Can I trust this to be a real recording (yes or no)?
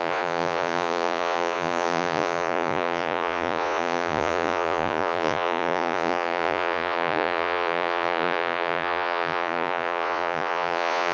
no